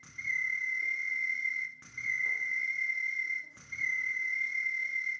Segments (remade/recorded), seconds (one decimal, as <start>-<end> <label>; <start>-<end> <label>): 0.0-1.0 recorded; 1.0-2.7 remade; 2.7-5.2 recorded